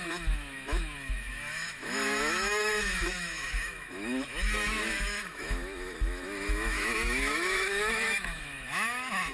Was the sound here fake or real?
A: fake